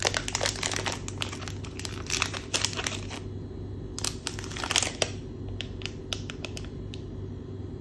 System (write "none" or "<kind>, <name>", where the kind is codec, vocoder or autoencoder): none